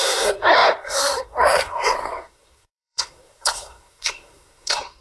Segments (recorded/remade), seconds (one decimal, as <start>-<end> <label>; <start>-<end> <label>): 0.0-5.0 remade